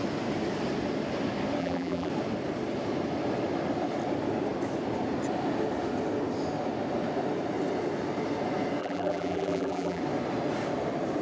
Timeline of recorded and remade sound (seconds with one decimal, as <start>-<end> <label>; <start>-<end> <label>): 0.0-1.6 recorded; 1.6-2.1 remade; 2.1-8.8 recorded; 8.8-10.0 remade; 10.0-11.2 recorded